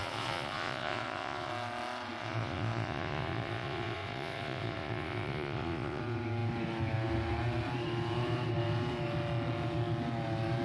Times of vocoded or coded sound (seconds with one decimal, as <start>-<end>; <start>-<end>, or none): 0.0-1.5; 2.2-6.0